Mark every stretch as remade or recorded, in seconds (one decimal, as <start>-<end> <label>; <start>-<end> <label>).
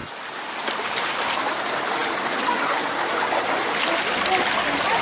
0.0-5.0 recorded